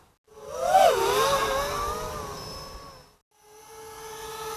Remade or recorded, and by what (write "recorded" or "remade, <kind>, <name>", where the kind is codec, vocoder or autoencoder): recorded